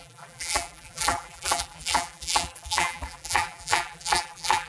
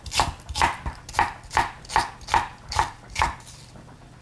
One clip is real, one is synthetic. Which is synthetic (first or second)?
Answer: first